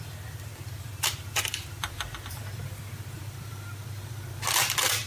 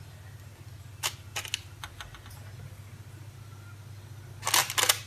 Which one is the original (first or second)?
second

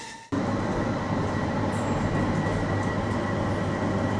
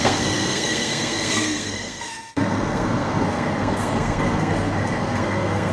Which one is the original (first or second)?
first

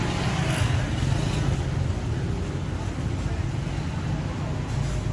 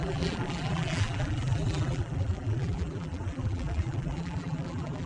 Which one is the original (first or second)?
first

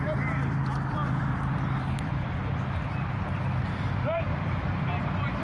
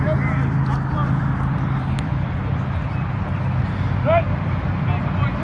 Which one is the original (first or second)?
second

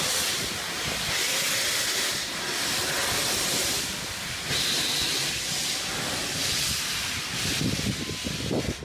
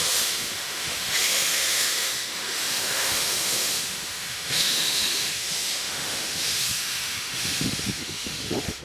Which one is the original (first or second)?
first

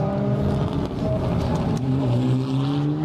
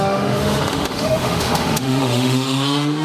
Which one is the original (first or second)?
first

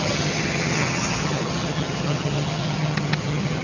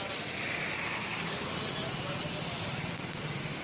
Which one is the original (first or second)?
second